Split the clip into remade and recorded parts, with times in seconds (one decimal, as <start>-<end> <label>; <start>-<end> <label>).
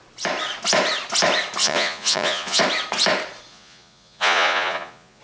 0.0-1.6 recorded; 1.6-2.6 remade; 2.6-3.5 recorded; 3.5-5.2 remade